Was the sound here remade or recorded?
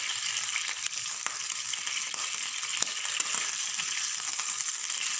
recorded